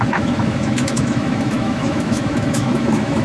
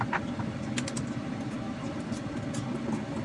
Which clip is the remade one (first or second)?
first